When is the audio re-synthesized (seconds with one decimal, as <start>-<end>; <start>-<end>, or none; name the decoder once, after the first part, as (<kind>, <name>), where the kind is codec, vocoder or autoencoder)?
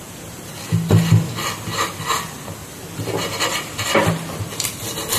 2.6-3.4 (vocoder, BigVGAN v2)